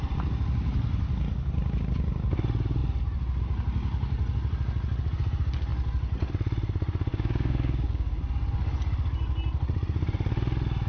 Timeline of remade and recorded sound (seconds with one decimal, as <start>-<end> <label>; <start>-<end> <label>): 0.0-7.1 recorded; 7.1-8.2 remade; 8.2-10.9 recorded